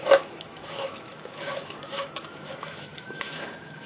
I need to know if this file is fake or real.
fake